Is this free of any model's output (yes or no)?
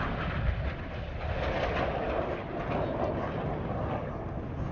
yes